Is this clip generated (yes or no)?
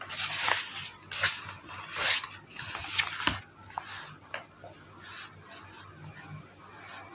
no